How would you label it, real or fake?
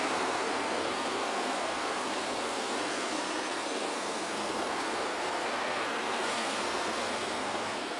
fake